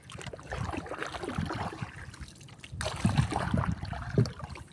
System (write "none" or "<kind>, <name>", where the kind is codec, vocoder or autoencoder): none